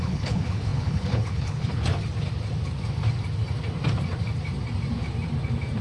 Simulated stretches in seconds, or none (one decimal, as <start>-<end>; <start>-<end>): 0.0-1.9